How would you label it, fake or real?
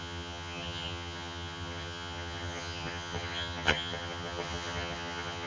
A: fake